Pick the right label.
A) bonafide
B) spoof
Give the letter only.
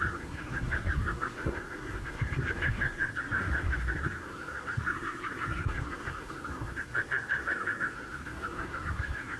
B